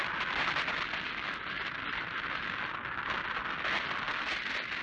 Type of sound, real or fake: real